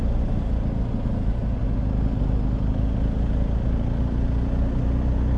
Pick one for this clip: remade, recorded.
recorded